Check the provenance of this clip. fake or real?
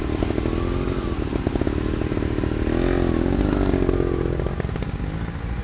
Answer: real